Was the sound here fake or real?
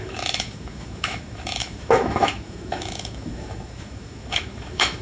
fake